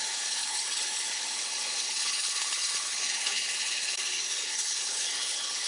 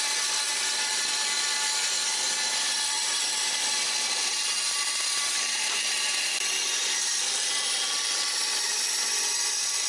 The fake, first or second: first